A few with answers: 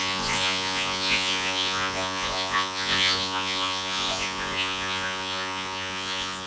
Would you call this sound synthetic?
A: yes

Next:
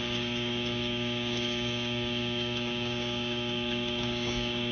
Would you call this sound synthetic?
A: yes